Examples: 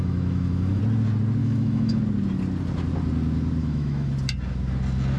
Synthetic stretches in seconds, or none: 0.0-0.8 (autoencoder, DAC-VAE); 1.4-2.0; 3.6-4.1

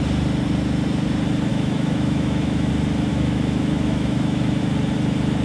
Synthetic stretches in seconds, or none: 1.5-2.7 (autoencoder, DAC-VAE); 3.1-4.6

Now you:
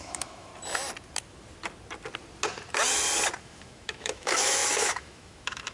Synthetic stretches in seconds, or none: 0.0-0.5 (autoencoder, DAC-VAE); 3.4-5.7

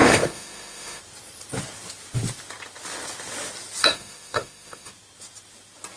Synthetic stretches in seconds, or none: 0.0-1.0 (autoencoder, DAC-VAE); 3.8-4.9

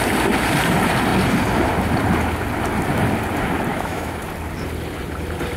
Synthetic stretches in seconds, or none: 3.7-4.2 (autoencoder, DAC-VAE)

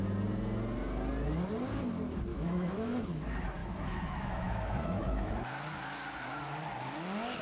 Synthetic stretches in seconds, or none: 2.3-3.2 (autoencoder, DAC-VAE); 3.6-5.4

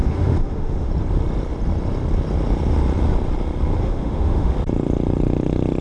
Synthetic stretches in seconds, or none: 0.0-0.9 (autoencoder, DAC-VAE); 3.8-4.5

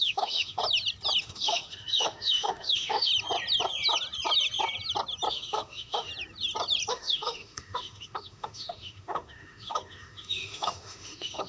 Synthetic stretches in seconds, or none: 0.0-0.6 (autoencoder, DAC-VAE); 1.2-3.1; 5.3-6.1; 6.9-11.5